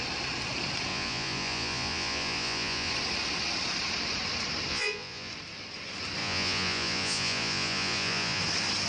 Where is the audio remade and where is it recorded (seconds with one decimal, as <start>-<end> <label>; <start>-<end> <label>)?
0.0-0.9 recorded; 0.9-2.9 remade; 2.9-4.7 recorded; 4.7-5.3 remade; 5.3-6.2 recorded; 6.2-8.4 remade; 8.4-8.9 recorded